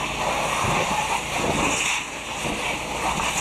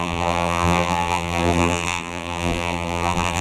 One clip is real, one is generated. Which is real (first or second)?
first